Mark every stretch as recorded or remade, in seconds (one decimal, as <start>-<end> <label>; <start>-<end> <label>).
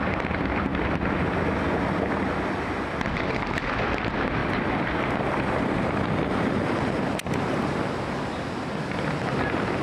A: 0.0-4.4 recorded; 4.4-7.6 remade; 7.6-9.8 recorded